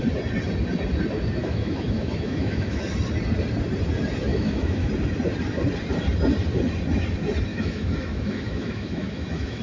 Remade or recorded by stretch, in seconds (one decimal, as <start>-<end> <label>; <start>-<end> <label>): 0.0-1.4 recorded; 1.4-2.8 remade; 2.8-4.3 recorded; 4.3-4.9 remade; 4.9-7.5 recorded; 7.5-9.6 remade